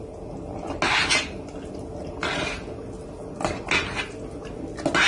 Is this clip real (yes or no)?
yes